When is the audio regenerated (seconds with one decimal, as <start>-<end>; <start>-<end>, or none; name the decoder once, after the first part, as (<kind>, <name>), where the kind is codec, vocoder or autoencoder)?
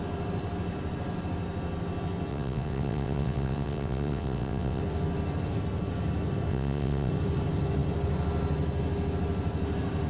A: 2.3-4.8 (vocoder, WaveNeXt); 6.5-7.1